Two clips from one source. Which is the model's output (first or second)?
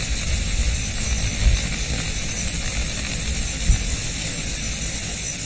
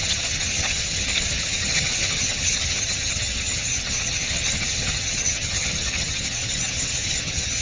second